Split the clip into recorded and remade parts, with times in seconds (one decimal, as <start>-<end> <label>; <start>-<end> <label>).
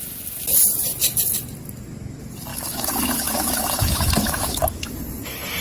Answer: 0.0-2.5 recorded; 2.5-4.9 remade; 4.9-5.6 recorded